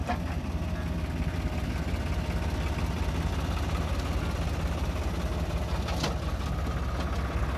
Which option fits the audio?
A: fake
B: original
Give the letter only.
B